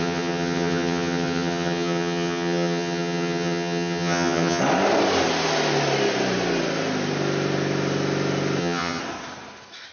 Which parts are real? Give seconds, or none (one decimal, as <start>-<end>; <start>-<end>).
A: 4.6-8.6; 9.0-9.9